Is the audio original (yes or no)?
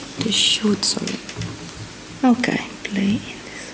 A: yes